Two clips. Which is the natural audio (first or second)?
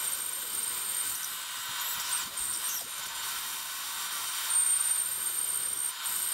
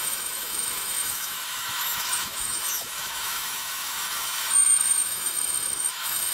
first